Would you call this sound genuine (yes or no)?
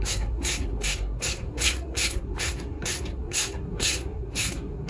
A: no